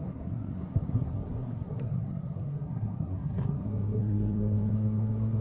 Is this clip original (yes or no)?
no